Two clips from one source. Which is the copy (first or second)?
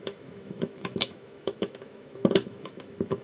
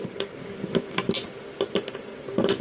first